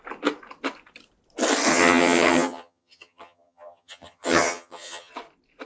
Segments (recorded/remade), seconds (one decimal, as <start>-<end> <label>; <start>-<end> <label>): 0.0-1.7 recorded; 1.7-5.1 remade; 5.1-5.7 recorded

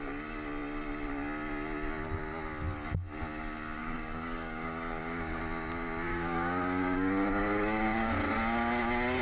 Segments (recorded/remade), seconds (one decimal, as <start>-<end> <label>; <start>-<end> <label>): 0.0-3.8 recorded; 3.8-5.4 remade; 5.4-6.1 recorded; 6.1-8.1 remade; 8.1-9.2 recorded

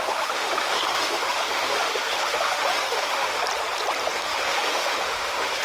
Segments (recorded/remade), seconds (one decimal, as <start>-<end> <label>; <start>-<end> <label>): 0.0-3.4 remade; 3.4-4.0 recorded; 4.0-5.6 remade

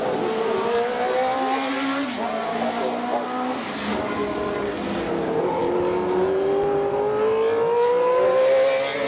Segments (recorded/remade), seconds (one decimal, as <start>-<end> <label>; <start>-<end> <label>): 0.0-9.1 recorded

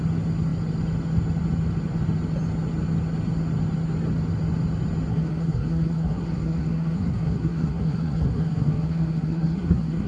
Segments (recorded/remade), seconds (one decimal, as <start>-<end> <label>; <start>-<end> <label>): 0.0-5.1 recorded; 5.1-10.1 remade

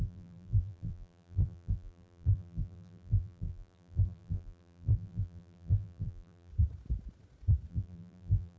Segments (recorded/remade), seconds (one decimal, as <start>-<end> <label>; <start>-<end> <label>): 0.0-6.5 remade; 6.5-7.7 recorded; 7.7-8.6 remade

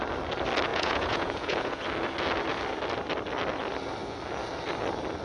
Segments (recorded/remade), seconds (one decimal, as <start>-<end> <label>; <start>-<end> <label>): 0.0-0.7 recorded; 0.7-1.8 remade; 1.8-5.2 recorded

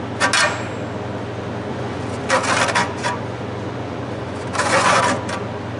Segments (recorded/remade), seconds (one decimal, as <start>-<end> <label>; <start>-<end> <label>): 0.0-1.7 recorded; 1.7-2.3 remade; 2.3-2.8 recorded; 2.8-5.0 remade; 5.0-5.8 recorded